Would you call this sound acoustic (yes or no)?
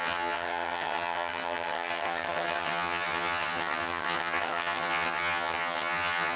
no